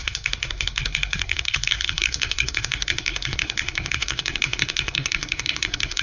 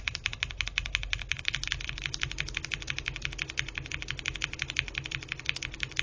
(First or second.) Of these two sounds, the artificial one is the first